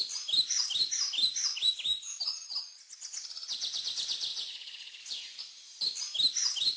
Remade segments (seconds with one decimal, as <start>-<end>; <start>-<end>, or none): 4.3-5.0